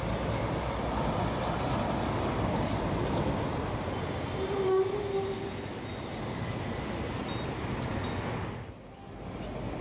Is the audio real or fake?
real